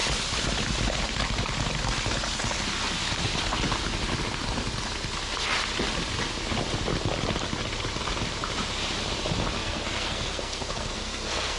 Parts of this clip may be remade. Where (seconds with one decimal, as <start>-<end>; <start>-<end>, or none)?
9.6-11.6